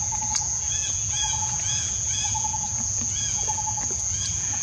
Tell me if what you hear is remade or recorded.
remade